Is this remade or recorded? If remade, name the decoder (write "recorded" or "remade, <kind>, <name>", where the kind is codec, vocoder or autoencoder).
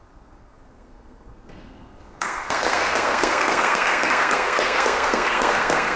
remade, codec, SNAC